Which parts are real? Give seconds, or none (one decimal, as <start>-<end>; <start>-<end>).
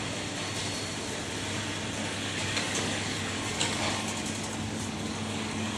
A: 0.0-2.0